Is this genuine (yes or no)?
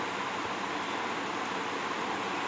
yes